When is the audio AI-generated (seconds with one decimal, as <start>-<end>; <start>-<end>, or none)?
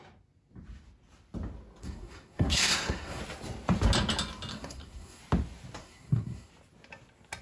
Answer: 1.8-3.2; 4.5-5.2; 5.8-6.5